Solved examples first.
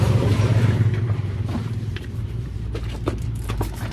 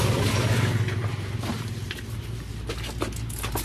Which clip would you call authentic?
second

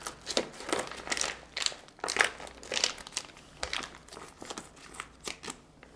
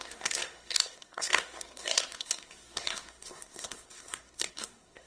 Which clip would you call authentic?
first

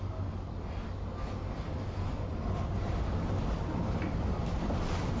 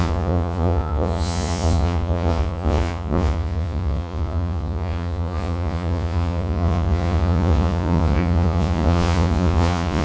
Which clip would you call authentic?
first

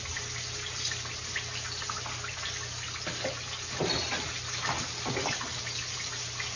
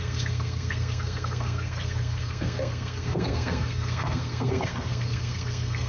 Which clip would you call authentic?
first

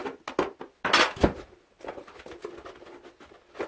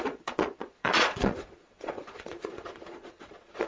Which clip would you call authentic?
first